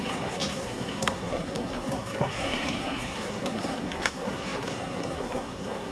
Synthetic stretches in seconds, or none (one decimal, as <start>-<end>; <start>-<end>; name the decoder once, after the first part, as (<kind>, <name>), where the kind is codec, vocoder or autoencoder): 0.0-5.9 (codec, SNAC)